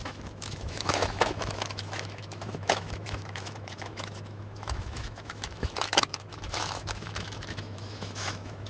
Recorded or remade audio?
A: remade